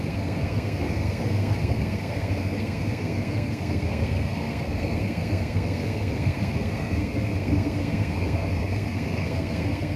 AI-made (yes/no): yes